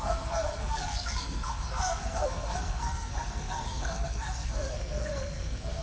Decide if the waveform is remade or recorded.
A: remade